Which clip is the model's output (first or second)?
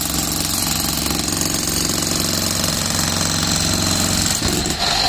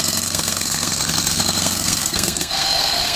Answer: second